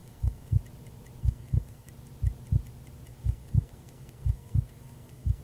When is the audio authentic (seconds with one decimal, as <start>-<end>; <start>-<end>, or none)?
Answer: 0.6-1.2; 1.9-3.1